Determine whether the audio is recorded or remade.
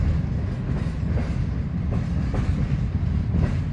recorded